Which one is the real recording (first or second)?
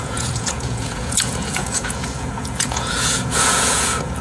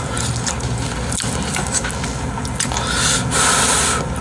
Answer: second